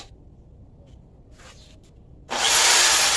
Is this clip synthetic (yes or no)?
no